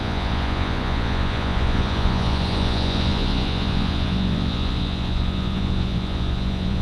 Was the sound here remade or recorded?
remade